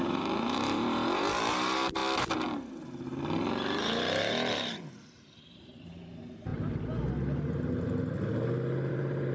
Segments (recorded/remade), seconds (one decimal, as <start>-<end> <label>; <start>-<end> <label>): 0.0-2.0 remade; 2.0-5.1 recorded; 5.1-6.5 remade; 6.5-8.9 recorded; 8.9-9.3 remade